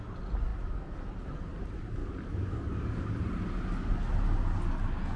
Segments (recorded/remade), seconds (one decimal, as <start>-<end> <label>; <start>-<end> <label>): 0.0-2.0 recorded; 2.0-3.1 remade; 3.1-5.2 recorded